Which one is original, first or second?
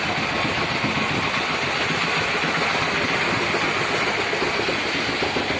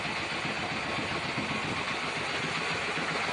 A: second